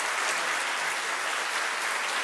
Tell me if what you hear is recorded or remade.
recorded